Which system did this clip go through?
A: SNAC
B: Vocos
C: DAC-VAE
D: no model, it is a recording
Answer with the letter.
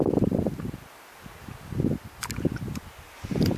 D